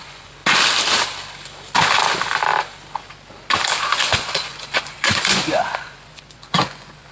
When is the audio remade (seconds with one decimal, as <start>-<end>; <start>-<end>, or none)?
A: 0.0-0.4; 3.8-7.1